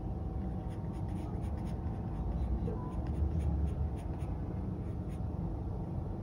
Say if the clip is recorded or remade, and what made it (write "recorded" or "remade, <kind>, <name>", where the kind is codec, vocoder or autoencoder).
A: recorded